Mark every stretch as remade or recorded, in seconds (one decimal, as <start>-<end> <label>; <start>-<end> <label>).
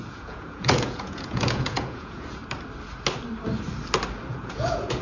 0.0-2.4 remade; 2.4-4.3 recorded; 4.3-5.0 remade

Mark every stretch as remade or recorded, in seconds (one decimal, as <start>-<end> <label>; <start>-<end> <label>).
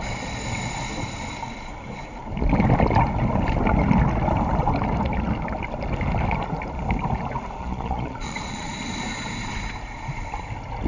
0.0-7.6 recorded; 7.6-8.7 remade; 8.7-10.9 recorded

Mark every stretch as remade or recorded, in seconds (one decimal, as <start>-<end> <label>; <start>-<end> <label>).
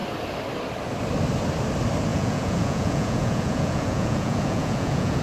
0.0-2.1 recorded; 2.1-5.2 remade